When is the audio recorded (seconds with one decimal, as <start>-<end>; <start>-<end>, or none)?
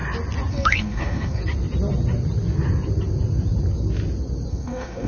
0.0-0.5; 1.4-4.5